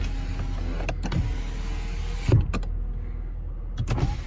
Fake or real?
real